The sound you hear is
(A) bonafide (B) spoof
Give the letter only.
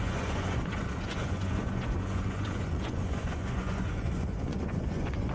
B